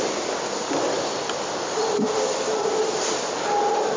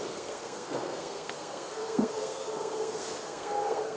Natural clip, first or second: first